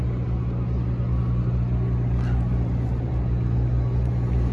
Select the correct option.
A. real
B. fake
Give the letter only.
A